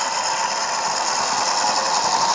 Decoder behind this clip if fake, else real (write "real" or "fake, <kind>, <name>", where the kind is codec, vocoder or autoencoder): real